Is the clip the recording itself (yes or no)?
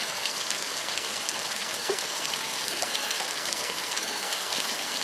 no